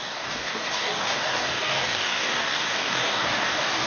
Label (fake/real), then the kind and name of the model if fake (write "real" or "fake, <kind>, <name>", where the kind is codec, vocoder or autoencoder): fake, codec, DAC